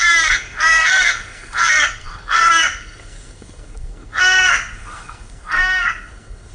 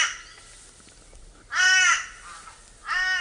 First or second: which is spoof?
first